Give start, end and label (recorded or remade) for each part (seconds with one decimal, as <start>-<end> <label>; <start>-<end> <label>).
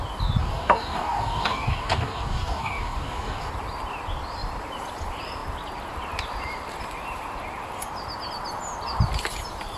0.0-0.4 recorded; 0.4-3.5 remade; 3.5-9.8 recorded